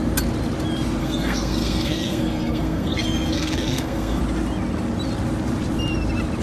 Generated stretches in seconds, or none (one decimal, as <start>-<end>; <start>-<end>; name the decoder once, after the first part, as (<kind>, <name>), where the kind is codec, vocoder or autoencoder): 1.0-4.2 (codec, SNAC)